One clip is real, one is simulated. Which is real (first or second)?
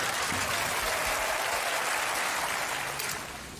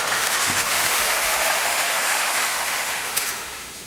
first